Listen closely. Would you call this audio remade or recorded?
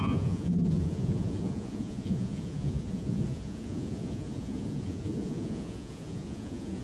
remade